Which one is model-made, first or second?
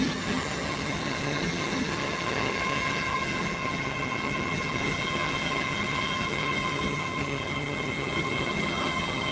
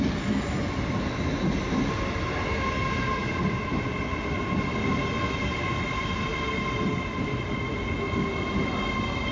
first